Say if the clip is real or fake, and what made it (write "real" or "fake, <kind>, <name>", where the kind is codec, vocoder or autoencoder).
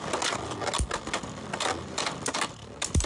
real